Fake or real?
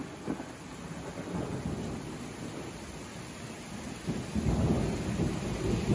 real